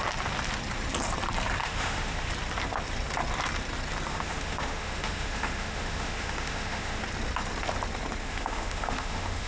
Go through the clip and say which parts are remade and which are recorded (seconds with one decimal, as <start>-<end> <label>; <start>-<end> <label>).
0.0-1.6 recorded; 1.6-2.3 remade; 2.3-4.1 recorded; 4.1-7.0 remade; 7.0-8.2 recorded; 8.2-9.5 remade